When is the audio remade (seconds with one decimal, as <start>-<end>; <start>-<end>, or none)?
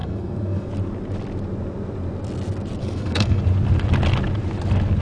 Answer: 0.0-0.7; 2.8-3.4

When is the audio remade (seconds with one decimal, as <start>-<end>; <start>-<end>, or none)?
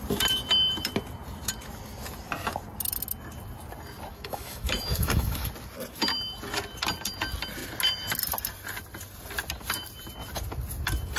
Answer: 4.1-5.5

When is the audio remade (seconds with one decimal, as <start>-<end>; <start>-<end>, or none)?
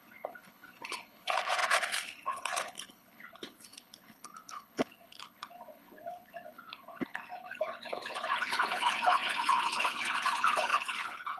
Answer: 0.0-11.4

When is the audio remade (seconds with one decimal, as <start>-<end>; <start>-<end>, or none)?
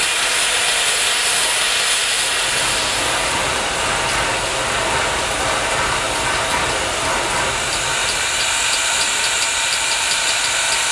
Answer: 8.0-10.5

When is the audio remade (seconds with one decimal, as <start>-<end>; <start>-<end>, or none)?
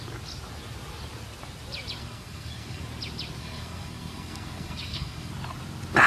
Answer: 2.0-2.8; 3.4-5.3